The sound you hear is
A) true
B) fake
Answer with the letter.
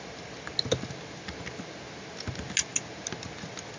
A